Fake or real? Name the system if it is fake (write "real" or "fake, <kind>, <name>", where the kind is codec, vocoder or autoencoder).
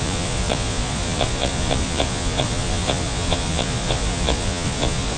fake, vocoder, Vocos